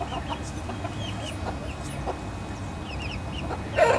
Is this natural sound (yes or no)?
yes